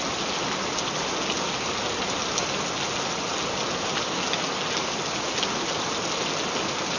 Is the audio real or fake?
real